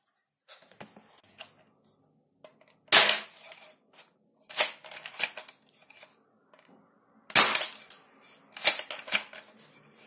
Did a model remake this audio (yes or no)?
no